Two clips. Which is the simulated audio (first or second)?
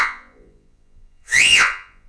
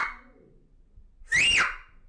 first